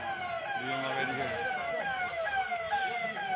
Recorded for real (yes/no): yes